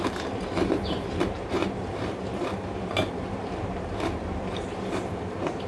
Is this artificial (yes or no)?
yes